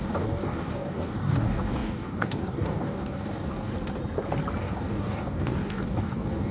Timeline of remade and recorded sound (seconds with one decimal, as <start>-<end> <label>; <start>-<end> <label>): 0.0-3.7 remade; 3.7-4.6 recorded; 4.6-6.5 remade